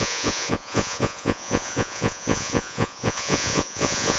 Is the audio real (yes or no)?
no